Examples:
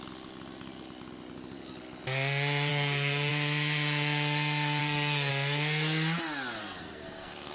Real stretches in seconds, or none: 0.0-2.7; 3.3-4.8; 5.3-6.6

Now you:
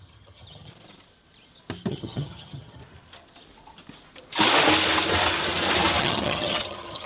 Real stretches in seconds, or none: 0.7-1.9; 2.8-6.0

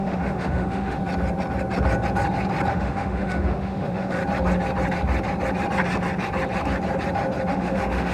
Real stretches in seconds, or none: 1.0-2.7; 4.2-7.5

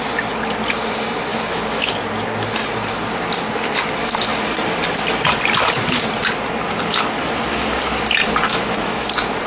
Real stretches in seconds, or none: 0.0-1.3; 1.9-8.5; 9.1-9.5

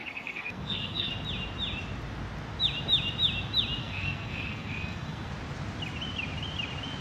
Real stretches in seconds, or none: 1.1-3.8; 5.3-7.0

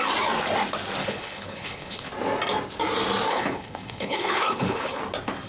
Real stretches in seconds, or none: 0.0-1.0; 2.1-3.3; 5.0-5.5